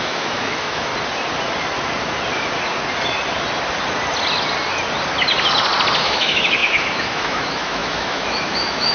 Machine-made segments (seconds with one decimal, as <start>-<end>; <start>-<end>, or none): 0.0-0.9; 6.0-8.9